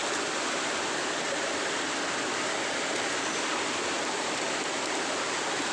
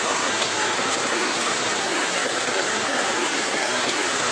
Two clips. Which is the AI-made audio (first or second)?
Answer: second